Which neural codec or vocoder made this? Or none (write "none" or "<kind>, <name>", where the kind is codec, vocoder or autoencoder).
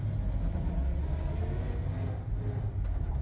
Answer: none